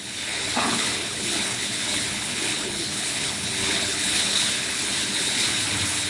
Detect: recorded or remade remade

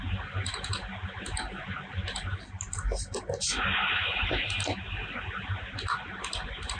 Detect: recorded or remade recorded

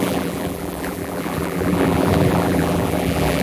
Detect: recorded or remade remade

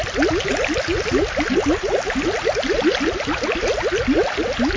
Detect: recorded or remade recorded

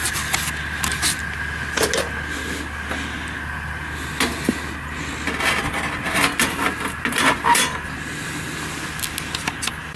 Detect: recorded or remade recorded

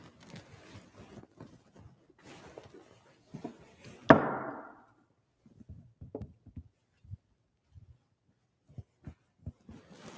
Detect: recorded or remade recorded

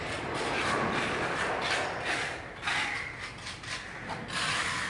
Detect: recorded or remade recorded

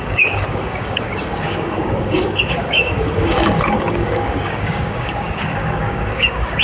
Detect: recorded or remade remade